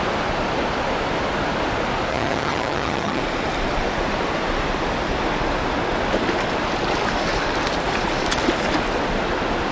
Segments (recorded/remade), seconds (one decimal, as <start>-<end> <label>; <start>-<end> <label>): 0.0-2.1 recorded; 2.1-3.2 remade; 3.2-9.7 recorded